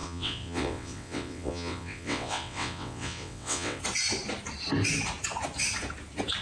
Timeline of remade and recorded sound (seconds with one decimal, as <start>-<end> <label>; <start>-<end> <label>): 0.0-3.8 remade; 3.8-6.4 recorded